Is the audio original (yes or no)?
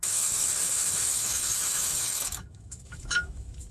no